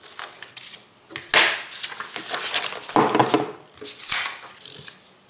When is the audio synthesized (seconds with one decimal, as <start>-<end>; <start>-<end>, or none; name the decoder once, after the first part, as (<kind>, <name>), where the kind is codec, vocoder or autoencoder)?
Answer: none